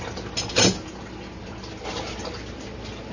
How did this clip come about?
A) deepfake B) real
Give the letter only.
B